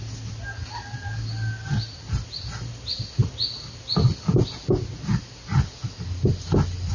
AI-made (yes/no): no